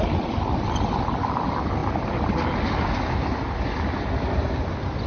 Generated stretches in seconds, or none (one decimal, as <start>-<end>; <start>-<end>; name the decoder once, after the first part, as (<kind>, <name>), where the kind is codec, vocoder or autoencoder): none